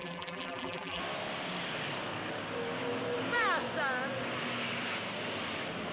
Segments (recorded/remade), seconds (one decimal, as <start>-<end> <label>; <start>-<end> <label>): 0.0-1.0 remade; 1.0-5.9 recorded